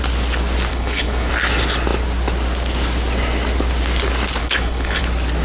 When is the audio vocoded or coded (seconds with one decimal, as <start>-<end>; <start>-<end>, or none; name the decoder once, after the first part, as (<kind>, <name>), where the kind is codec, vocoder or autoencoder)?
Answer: 0.7-1.3 (codec, HILCodec); 4.4-5.0